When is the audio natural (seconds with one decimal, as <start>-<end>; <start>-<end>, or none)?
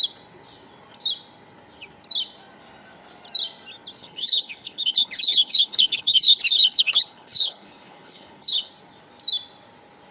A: 0.0-4.0; 8.7-10.1